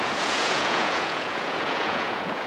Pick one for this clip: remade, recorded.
remade